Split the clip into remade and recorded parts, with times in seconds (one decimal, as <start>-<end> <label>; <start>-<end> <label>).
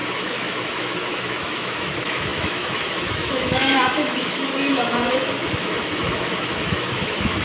0.0-7.4 remade